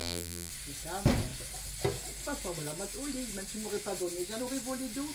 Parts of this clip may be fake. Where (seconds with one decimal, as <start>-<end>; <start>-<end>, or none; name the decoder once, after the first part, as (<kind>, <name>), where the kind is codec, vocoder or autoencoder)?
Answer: 0.0-0.5 (vocoder, BigVGAN v2)